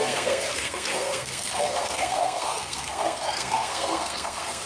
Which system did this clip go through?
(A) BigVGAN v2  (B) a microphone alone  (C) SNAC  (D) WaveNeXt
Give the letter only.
C